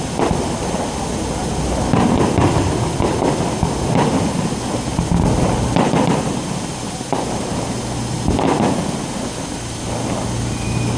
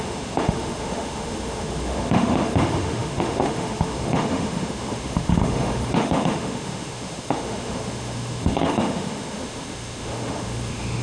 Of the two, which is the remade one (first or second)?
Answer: second